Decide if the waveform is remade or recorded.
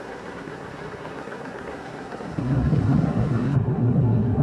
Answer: remade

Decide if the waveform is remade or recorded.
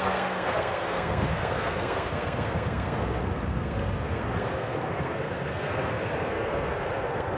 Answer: remade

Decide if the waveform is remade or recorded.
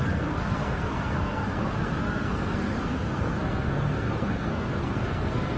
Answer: remade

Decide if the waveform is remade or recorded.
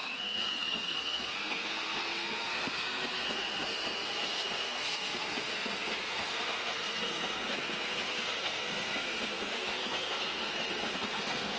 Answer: remade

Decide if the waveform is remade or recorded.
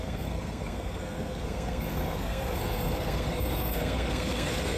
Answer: remade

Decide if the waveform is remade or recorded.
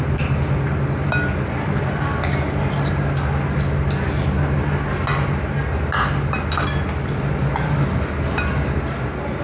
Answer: recorded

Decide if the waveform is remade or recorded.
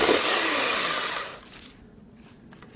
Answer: recorded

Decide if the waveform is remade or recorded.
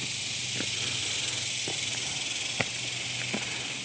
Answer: recorded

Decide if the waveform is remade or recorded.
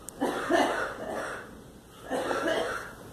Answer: recorded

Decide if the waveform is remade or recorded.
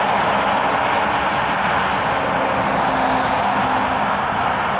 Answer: recorded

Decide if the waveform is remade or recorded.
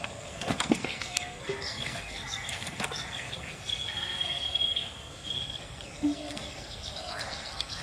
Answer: remade